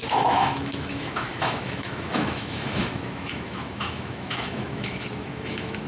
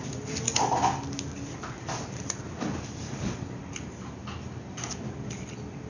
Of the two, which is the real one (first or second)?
second